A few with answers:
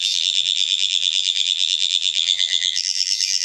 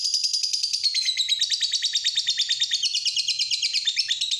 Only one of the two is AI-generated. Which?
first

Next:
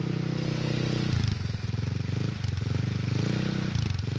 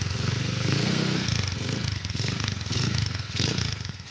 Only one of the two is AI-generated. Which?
second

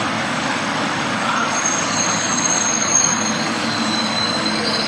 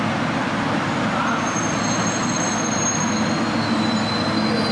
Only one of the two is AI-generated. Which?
first